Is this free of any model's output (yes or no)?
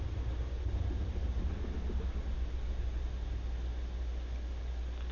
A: yes